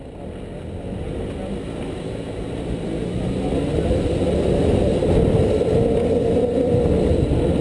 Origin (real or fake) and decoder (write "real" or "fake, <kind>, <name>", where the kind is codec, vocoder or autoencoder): real